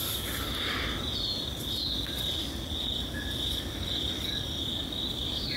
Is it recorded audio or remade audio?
recorded